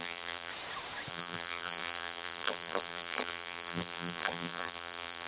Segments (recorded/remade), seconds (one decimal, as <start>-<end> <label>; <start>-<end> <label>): 0.0-0.5 remade; 0.5-1.1 recorded; 1.1-5.3 remade